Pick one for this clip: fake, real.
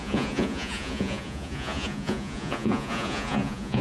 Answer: fake